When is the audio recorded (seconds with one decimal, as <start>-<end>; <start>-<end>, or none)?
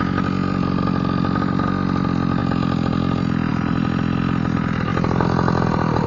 0.0-6.1